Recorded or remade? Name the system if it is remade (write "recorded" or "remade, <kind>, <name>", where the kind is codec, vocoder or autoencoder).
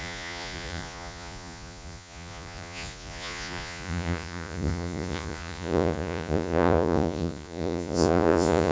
remade, vocoder, Vocos